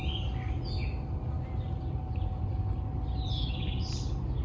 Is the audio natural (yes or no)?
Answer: yes